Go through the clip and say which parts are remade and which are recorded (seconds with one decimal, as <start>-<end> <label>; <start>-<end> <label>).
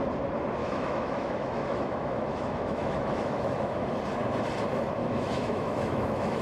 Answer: 0.0-0.6 recorded; 0.6-3.9 remade; 3.9-5.0 recorded; 5.0-6.4 remade